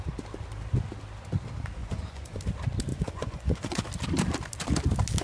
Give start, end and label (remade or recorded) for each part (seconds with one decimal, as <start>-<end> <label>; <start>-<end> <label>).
0.0-1.8 recorded; 1.8-2.4 remade; 2.4-2.9 recorded; 2.9-3.8 remade; 3.8-5.2 recorded